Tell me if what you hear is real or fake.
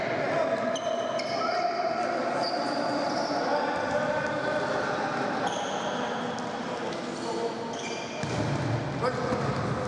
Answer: real